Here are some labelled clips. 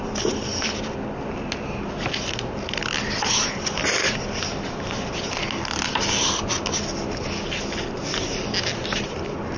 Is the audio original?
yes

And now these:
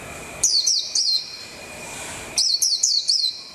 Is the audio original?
no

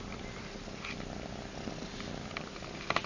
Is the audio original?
yes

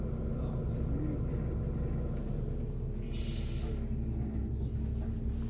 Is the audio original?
yes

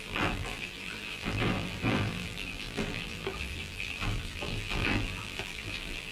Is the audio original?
no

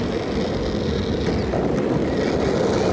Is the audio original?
yes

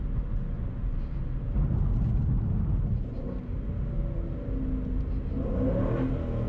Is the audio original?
yes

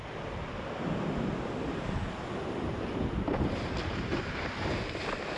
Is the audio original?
yes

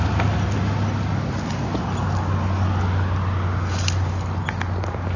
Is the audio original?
yes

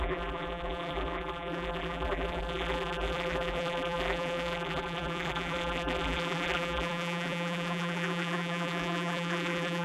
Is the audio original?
no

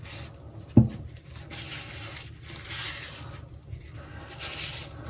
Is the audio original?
yes